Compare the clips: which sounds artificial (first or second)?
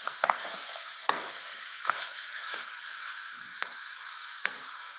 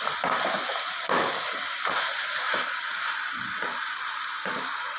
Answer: first